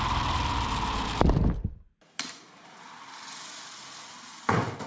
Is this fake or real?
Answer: real